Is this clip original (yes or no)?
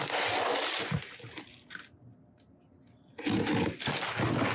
yes